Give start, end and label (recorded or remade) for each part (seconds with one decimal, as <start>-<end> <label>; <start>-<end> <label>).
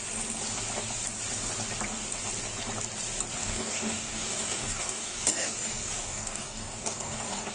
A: 0.0-3.4 recorded; 3.4-7.5 remade